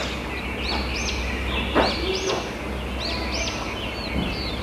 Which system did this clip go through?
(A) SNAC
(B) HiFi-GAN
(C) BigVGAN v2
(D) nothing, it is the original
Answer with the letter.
D